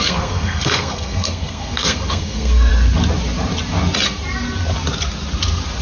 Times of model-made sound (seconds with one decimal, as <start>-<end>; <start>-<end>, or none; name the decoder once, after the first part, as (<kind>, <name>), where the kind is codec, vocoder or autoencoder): 0.0-2.7 (codec, SNAC)